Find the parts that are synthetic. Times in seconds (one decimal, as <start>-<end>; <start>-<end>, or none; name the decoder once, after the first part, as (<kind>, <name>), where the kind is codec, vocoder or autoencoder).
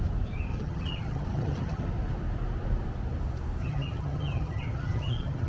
0.5-1.9 (vocoder, HiFi-GAN); 3.6-5.5